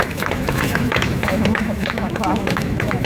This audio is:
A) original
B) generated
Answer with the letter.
B